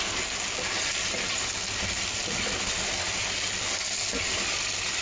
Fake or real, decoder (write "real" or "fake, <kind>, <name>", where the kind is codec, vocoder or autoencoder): real